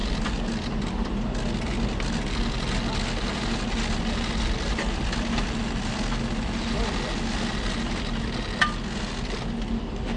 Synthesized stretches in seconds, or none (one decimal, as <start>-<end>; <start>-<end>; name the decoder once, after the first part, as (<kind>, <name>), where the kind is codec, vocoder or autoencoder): none